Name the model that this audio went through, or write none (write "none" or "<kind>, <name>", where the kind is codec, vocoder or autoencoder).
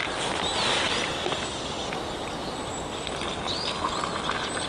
none